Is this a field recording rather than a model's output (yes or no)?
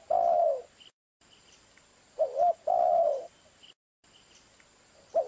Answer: yes